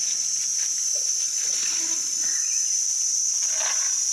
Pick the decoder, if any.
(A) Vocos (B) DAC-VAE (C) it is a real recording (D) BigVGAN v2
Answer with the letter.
C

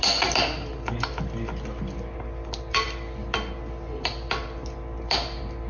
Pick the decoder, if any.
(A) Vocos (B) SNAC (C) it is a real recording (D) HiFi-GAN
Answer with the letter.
C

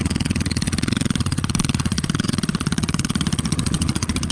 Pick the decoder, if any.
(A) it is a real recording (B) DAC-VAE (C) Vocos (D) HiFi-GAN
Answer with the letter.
C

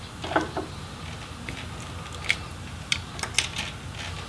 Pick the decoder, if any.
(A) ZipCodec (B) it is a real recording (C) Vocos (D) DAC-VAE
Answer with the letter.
B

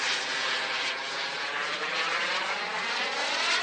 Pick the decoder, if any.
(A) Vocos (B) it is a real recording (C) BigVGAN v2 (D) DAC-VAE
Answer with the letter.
B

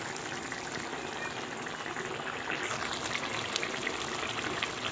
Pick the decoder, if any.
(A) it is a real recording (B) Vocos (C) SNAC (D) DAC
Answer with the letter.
A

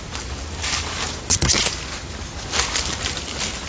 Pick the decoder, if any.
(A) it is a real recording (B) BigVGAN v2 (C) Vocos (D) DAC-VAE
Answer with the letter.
A